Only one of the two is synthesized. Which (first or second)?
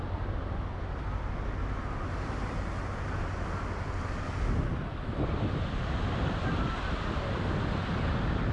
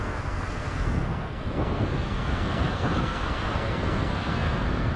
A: second